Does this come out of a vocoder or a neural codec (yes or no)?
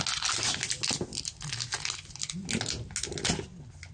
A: no